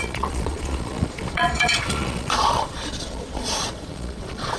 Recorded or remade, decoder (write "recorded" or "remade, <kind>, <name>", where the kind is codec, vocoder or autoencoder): remade, vocoder, Vocos